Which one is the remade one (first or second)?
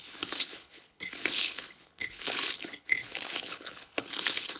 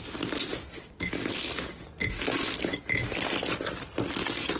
first